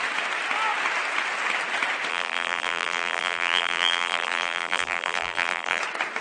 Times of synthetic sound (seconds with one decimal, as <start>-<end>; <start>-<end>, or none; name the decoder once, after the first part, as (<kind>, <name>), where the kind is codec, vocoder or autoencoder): 2.1-5.8 (vocoder, BigVGAN v2)